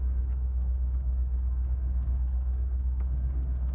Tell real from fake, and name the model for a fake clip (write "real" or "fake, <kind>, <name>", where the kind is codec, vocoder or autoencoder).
fake, codec, SNAC